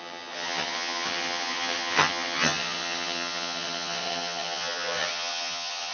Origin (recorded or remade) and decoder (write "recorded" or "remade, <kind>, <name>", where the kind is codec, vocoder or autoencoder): remade, vocoder, HiFi-GAN